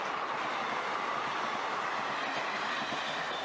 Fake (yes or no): no